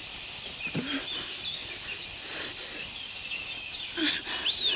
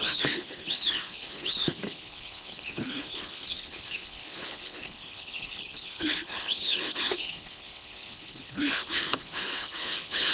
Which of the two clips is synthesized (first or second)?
second